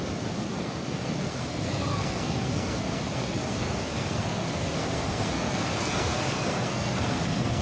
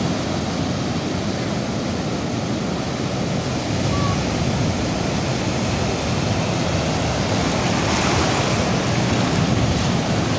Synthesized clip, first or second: first